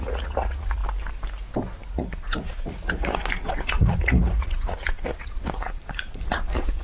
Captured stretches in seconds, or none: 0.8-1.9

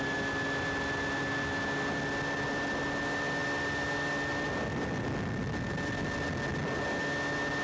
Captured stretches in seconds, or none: 0.0-7.6

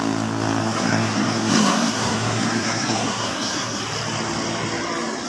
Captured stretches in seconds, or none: 0.0-0.6; 3.8-5.3

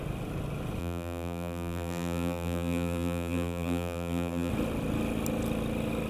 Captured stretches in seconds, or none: 0.0-0.8; 4.5-6.1

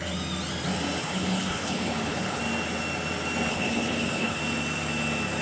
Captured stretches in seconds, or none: 0.0-1.0; 2.4-3.5; 4.4-5.4